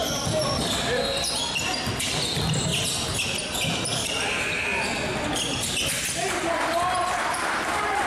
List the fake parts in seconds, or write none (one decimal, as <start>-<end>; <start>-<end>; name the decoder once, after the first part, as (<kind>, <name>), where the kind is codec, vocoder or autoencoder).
0.0-2.7 (vocoder, BigVGAN v2); 7.6-8.1